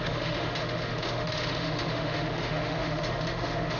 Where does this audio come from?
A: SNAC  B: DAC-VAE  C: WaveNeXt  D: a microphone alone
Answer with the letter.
B